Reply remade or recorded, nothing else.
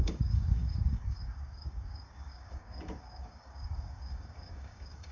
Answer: remade